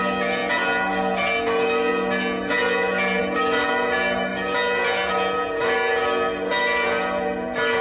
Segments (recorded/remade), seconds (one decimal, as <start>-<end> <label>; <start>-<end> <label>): 0.0-7.8 recorded